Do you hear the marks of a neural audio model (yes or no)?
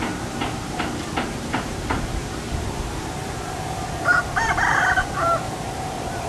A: yes